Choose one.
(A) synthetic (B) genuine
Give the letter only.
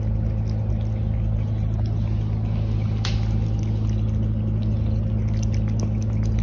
B